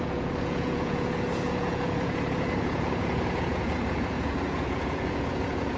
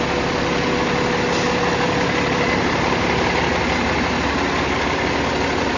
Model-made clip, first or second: first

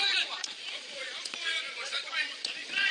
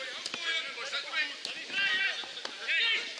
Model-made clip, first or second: first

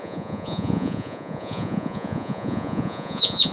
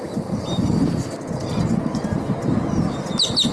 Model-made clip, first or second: first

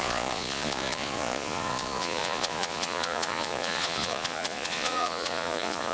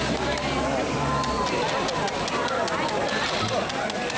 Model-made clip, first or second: first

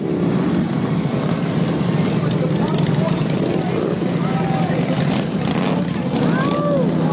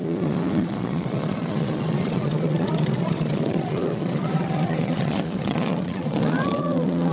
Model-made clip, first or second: second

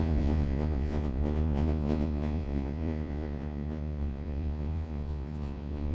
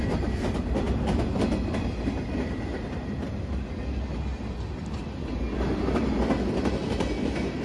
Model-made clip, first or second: first